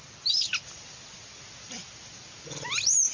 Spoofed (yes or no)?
no